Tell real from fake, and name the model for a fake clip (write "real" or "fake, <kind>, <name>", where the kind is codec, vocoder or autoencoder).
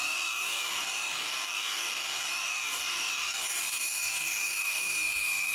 fake, codec, DAC